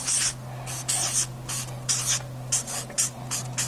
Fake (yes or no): no